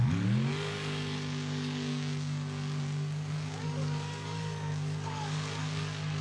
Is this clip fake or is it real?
fake